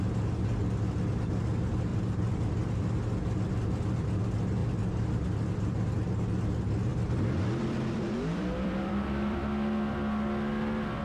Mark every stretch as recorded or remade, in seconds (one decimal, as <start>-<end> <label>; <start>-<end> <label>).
0.0-1.9 recorded; 1.9-3.5 remade; 3.5-4.6 recorded; 4.6-5.8 remade; 5.8-6.9 recorded; 6.9-9.4 remade; 9.4-11.0 recorded

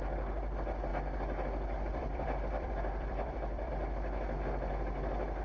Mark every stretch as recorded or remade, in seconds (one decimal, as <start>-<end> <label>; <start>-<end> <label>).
0.0-0.9 recorded; 0.9-3.7 remade; 3.7-5.4 recorded

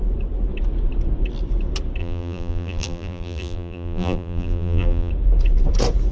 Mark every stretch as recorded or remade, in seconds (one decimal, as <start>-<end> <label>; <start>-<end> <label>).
0.0-2.0 recorded; 2.0-5.1 remade; 5.1-6.1 recorded

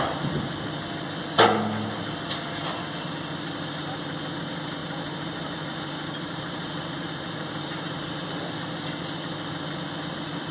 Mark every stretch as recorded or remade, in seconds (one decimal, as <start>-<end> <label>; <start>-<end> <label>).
0.0-4.8 recorded; 4.8-8.3 remade; 8.3-10.5 recorded

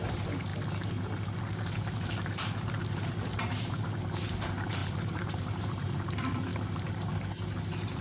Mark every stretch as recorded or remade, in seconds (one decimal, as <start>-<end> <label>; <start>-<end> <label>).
0.0-0.5 remade; 0.5-1.4 recorded; 1.4-8.0 remade